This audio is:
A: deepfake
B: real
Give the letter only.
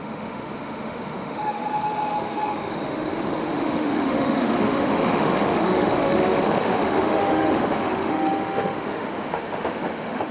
A